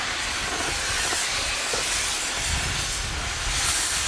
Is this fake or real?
real